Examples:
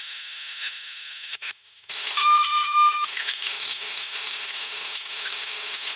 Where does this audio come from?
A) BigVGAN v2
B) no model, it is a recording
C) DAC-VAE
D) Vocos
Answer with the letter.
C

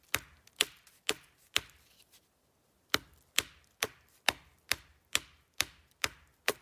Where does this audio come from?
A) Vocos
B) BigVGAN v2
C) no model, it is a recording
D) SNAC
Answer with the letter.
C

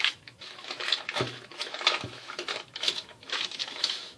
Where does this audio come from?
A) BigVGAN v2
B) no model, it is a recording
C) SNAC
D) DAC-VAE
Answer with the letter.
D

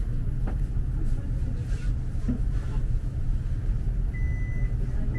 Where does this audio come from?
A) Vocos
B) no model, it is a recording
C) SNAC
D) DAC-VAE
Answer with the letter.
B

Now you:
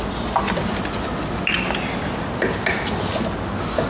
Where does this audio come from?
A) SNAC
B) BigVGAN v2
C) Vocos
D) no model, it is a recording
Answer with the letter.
D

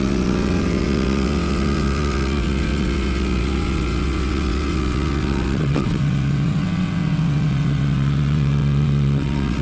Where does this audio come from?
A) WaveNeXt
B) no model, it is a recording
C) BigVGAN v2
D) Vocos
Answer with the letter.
A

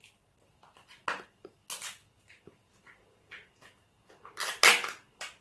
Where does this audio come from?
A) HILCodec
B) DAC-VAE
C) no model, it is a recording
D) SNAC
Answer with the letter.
C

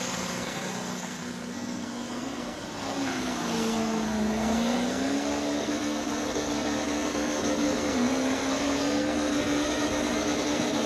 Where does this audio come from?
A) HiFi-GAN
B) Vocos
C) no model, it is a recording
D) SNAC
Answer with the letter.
D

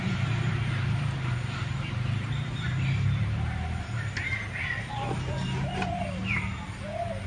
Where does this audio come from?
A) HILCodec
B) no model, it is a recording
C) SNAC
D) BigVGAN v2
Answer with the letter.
D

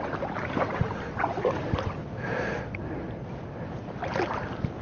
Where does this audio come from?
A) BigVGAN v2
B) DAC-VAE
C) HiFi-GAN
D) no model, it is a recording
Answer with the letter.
D